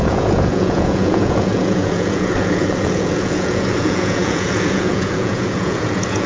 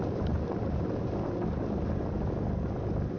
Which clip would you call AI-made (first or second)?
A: first